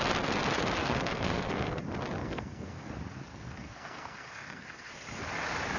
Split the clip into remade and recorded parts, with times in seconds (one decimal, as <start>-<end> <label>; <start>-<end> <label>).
0.0-0.8 recorded; 0.8-1.8 remade; 1.8-2.2 recorded; 2.2-2.9 remade; 2.9-3.3 recorded; 3.3-4.9 remade; 4.9-5.8 recorded